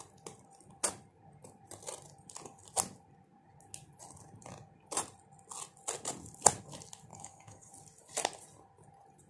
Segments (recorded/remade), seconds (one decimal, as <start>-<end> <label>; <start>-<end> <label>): 0.0-7.1 recorded; 7.1-7.7 remade; 7.7-9.3 recorded